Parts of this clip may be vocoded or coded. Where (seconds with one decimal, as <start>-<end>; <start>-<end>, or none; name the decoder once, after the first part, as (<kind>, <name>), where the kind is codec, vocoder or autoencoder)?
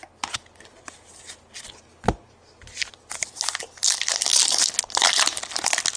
none